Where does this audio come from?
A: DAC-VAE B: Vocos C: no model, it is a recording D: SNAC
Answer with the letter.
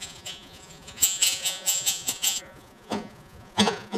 B